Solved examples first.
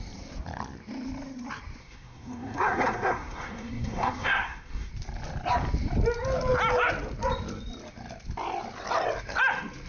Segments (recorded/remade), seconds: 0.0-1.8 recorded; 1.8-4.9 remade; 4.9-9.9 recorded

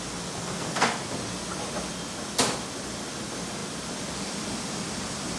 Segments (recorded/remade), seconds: 0.0-0.4 recorded; 0.4-1.0 remade; 1.0-5.4 recorded